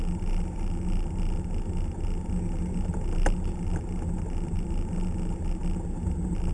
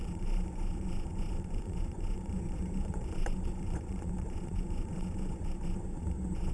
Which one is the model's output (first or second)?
second